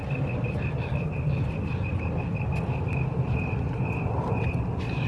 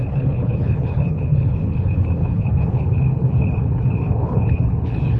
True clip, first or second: first